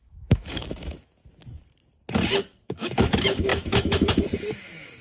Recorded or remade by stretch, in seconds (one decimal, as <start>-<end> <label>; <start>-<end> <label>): 0.0-1.2 remade; 1.2-2.7 recorded; 2.7-5.0 remade